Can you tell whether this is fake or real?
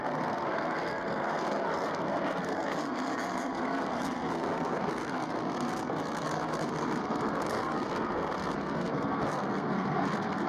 fake